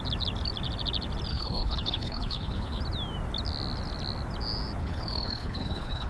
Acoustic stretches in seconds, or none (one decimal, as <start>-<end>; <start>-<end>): 0.0-1.3; 2.8-4.8

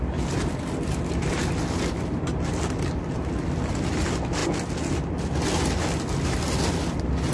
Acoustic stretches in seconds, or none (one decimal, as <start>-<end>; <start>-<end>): 0.0-7.3